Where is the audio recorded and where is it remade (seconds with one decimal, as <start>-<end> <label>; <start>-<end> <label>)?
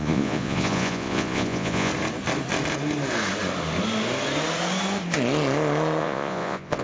0.0-1.9 remade; 1.9-6.0 recorded; 6.0-6.8 remade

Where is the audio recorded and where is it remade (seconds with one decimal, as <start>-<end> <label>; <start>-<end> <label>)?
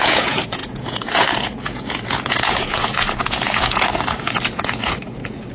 0.0-5.5 remade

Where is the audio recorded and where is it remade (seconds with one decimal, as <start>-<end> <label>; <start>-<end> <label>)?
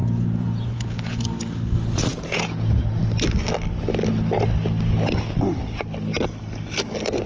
0.0-1.2 remade; 1.2-2.1 recorded; 2.1-3.0 remade; 3.0-7.3 recorded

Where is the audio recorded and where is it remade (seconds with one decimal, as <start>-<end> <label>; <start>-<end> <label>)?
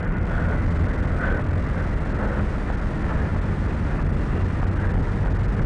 0.0-5.7 recorded